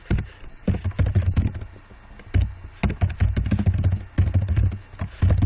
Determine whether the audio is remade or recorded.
recorded